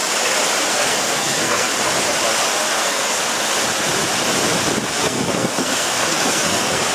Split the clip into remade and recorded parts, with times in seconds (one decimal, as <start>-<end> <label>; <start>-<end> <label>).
0.0-0.7 recorded; 0.7-1.7 remade; 1.7-2.8 recorded; 2.8-3.2 remade; 3.2-4.9 recorded; 4.9-6.9 remade

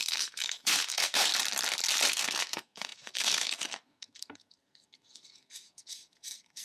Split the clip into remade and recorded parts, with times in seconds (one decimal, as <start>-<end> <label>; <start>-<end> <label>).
0.0-1.3 remade; 1.3-2.1 recorded; 2.1-6.6 remade

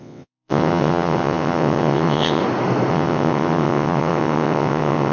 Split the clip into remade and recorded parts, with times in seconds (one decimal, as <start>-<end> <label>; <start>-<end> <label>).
0.0-2.4 remade; 2.4-2.9 recorded; 2.9-5.1 remade

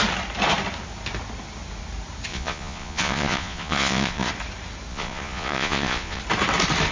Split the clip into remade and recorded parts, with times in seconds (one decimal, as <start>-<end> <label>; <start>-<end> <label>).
0.0-2.3 recorded; 2.3-4.3 remade; 4.3-4.9 recorded; 4.9-6.2 remade; 6.2-6.9 recorded

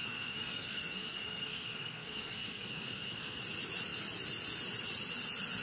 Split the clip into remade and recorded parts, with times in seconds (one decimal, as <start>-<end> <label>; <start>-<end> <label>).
0.0-3.4 remade; 3.4-5.6 recorded

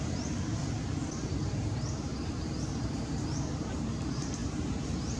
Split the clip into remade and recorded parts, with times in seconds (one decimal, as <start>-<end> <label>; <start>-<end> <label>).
0.0-0.6 remade; 0.6-1.4 recorded; 1.4-4.4 remade; 4.4-5.2 recorded

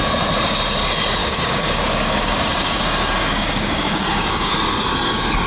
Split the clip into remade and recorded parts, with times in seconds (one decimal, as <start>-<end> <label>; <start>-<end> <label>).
0.0-1.2 recorded; 1.2-4.5 remade; 4.5-5.5 recorded

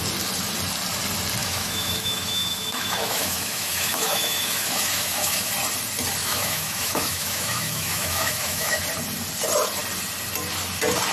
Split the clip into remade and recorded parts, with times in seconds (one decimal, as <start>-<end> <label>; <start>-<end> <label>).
0.0-1.4 recorded; 1.4-5.5 remade; 5.5-6.2 recorded; 6.2-8.8 remade; 8.8-11.1 recorded